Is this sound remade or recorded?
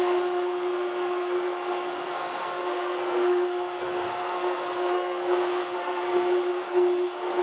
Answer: remade